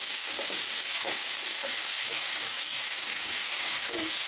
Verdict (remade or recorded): remade